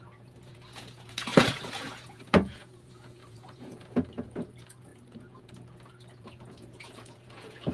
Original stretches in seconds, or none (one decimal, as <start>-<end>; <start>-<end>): none